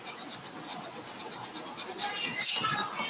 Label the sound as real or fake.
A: real